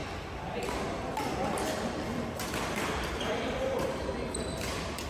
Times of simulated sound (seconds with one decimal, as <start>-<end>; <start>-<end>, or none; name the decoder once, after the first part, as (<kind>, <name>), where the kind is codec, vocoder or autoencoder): 3.1-5.1 (vocoder, BigVGAN v2)